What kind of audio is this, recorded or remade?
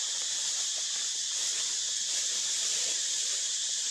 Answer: remade